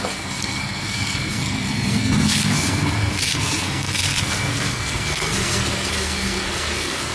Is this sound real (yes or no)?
no